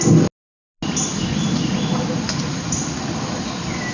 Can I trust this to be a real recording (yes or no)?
yes